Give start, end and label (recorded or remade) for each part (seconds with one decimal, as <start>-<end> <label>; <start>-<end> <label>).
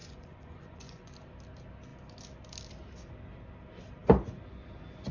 0.0-1.1 remade; 1.1-5.1 recorded